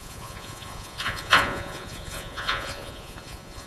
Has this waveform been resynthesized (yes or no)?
yes